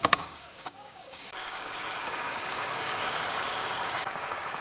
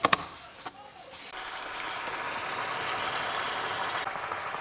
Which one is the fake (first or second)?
first